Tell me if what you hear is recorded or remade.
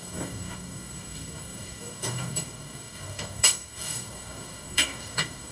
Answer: remade